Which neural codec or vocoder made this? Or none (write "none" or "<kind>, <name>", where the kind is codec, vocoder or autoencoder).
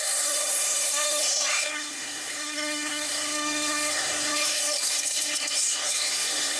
codec, SNAC